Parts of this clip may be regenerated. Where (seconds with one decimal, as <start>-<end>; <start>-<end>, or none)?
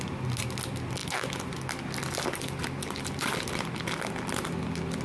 none